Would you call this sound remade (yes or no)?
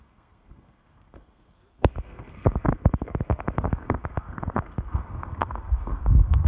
yes